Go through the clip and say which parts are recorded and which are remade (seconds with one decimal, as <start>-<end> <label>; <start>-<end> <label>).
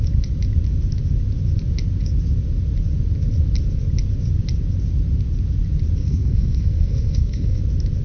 0.0-6.0 recorded; 6.0-7.6 remade; 7.6-8.0 recorded